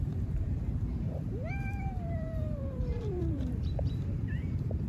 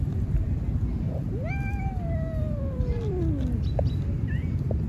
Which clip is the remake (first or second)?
first